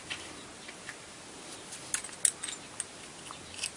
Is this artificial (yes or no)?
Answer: no